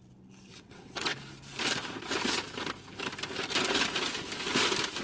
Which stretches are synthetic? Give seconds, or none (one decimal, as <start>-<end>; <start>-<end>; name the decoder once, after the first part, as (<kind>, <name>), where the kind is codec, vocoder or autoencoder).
0.5-1.2 (vocoder, WaveNeXt)